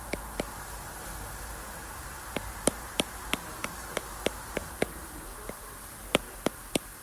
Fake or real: fake